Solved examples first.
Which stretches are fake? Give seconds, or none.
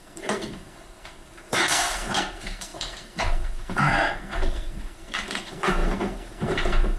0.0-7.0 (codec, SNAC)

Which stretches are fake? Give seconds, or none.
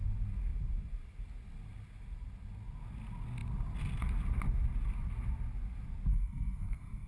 6.1-7.1 (codec, SNAC)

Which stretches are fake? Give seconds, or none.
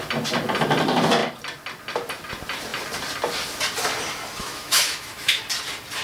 4.4-5.4 (autoencoder, DAC-VAE)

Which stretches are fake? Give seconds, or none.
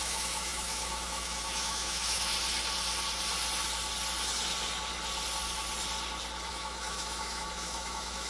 0.0-2.3 (autoencoder, DAC-VAE); 6.5-8.3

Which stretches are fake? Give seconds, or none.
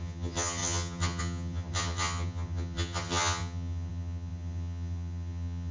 0.0-5.7 (vocoder, HiFi-GAN)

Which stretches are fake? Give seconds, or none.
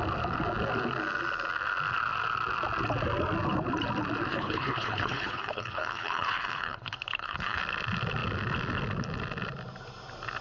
4.3-7.6 (codec, HILCodec)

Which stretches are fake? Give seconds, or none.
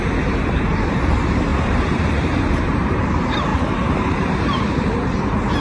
1.5-3.0 (vocoder, BigVGAN v2); 3.5-4.7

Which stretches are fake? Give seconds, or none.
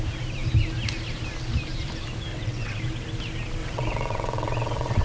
2.3-2.8 (vocoder, WaveNeXt); 3.6-5.0